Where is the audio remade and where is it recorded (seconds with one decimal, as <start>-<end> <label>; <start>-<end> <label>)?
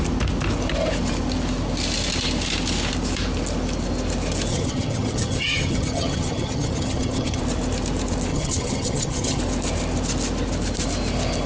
0.0-4.5 recorded; 4.5-7.4 remade; 7.4-8.3 recorded; 8.3-9.4 remade; 9.4-11.5 recorded